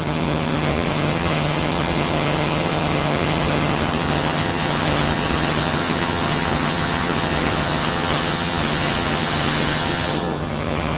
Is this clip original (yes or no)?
no